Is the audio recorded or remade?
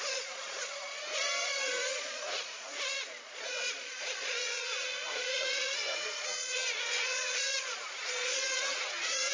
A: remade